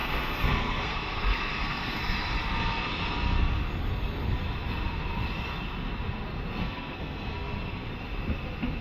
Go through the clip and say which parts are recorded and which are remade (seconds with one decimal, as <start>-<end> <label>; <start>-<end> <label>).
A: 0.0-2.0 remade; 2.0-6.6 recorded; 6.6-7.9 remade; 7.9-8.8 recorded